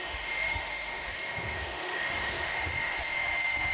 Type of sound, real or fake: fake